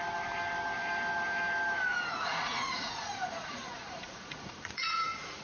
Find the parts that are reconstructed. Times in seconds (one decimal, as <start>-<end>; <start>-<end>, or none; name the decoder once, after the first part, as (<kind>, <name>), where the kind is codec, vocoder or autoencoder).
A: 1.9-5.4 (vocoder, Vocos)